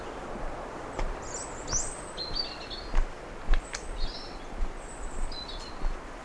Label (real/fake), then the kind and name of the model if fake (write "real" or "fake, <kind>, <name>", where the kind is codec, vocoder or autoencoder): real